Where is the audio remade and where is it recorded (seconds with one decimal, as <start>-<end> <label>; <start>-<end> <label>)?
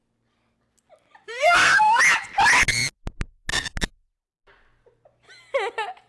0.0-1.2 recorded; 1.2-2.0 remade; 2.0-6.1 recorded